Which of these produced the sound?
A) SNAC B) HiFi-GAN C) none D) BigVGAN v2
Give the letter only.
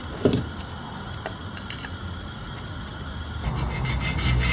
C